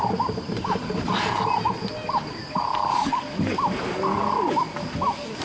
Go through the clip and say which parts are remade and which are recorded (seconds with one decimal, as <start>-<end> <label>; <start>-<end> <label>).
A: 0.0-5.4 recorded